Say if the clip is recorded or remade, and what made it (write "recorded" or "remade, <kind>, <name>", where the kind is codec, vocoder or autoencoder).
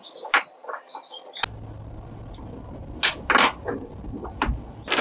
recorded